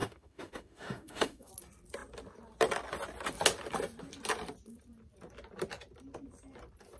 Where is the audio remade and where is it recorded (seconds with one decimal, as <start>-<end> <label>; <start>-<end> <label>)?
0.0-1.5 remade; 1.5-7.0 recorded